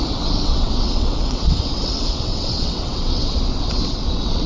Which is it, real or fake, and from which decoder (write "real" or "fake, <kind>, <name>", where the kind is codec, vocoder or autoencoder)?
fake, vocoder, WaveNeXt